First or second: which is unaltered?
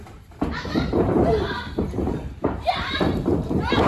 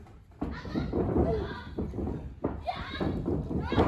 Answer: second